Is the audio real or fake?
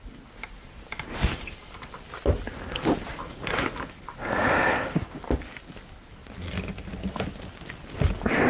real